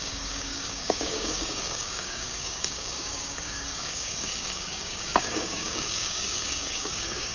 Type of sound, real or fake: fake